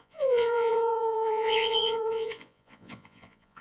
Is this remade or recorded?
remade